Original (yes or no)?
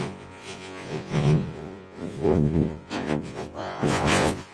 no